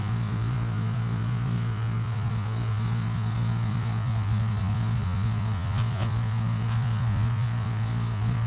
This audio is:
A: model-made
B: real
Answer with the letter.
A